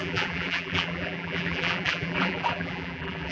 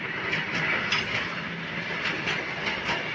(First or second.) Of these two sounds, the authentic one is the second